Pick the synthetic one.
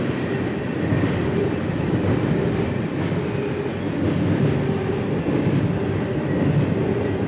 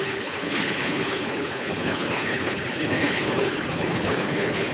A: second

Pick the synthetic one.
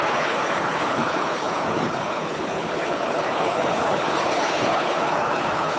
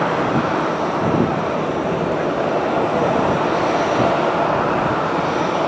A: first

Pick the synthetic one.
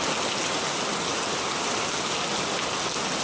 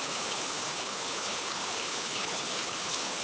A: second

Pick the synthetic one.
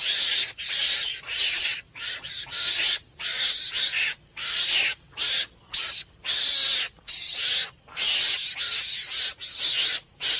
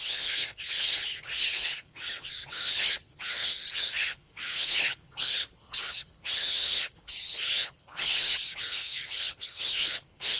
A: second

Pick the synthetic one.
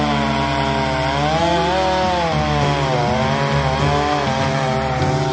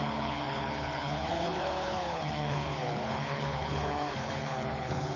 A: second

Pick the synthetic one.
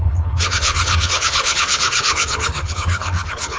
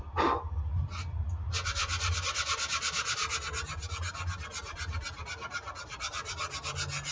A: first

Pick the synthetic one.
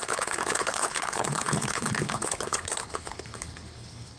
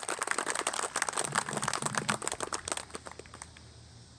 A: first